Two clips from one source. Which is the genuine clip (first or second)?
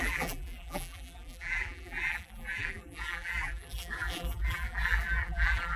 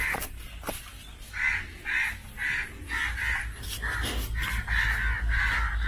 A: second